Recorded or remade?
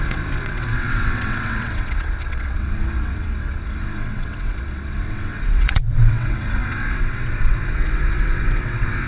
remade